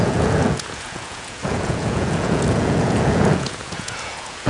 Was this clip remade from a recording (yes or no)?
yes